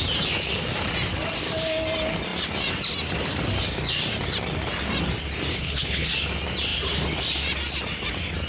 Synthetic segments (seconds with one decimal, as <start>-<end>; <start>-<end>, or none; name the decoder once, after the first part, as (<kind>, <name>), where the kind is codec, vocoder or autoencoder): 5.5-6.1 (codec, HILCodec)